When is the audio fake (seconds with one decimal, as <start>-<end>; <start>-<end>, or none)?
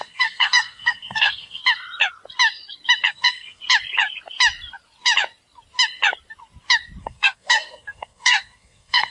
0.0-1.6; 3.1-3.6; 7.0-9.1